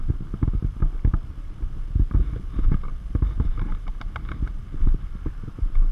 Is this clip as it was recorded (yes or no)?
yes